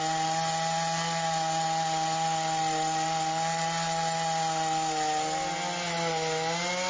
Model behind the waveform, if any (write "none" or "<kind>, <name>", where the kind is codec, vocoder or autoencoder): none